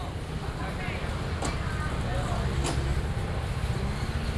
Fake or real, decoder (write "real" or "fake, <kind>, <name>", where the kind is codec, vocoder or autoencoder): real